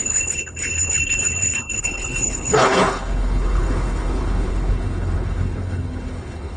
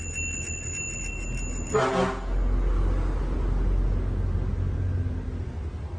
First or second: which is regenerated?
first